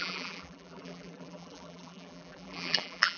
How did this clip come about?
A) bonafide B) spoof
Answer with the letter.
B